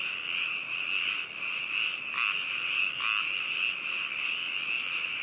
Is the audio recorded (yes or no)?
yes